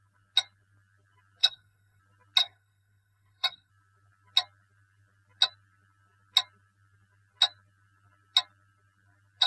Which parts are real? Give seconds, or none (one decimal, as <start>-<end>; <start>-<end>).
0.0-1.4; 2.0-2.4; 3.7-9.5